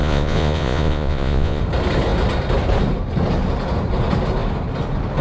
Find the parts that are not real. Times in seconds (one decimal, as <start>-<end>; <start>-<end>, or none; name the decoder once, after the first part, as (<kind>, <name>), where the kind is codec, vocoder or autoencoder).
0.0-1.6 (vocoder, Vocos)